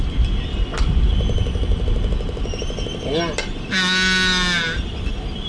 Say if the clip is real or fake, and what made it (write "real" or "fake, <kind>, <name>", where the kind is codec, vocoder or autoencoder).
real